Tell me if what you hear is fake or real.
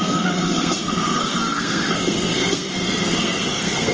fake